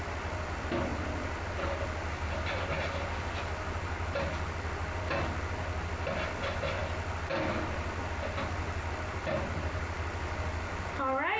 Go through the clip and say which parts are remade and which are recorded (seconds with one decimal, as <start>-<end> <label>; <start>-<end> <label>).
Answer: 0.0-11.4 recorded